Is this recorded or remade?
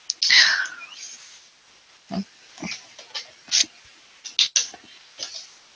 recorded